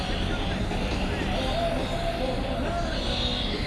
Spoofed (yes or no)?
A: no